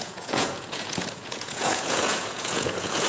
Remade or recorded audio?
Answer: remade